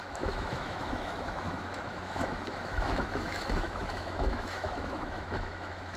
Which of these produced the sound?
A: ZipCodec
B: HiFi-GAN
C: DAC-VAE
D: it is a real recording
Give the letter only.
C